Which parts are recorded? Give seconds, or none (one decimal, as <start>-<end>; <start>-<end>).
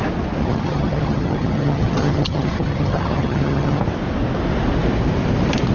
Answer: 0.0-0.4; 3.8-5.7